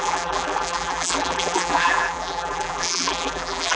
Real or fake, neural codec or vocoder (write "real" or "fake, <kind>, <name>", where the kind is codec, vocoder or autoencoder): fake, vocoder, BigVGAN v2